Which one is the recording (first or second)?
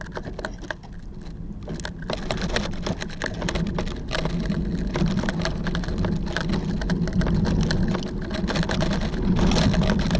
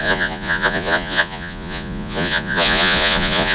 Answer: first